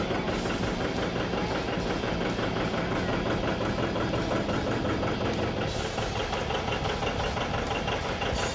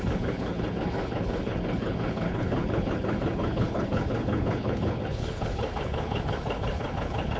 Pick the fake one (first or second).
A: second